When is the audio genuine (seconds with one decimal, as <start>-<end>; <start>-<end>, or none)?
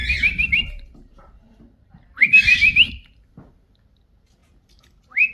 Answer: 3.2-5.3